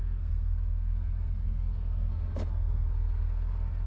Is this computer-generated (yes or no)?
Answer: yes